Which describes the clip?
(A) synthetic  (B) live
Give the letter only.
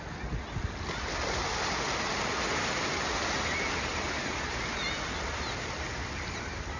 B